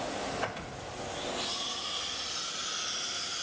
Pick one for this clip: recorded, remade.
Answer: recorded